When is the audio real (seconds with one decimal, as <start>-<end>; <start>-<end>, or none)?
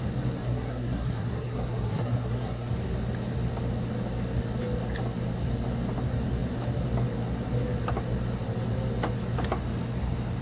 0.0-0.4; 2.7-10.4